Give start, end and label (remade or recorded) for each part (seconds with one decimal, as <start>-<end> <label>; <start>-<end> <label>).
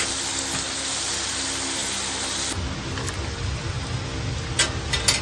0.0-5.2 recorded